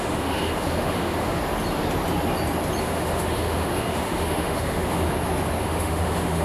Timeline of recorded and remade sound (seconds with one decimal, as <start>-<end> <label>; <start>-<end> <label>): 0.0-1.4 remade; 1.4-2.8 recorded; 2.8-5.1 remade; 5.1-5.6 recorded; 5.6-6.4 remade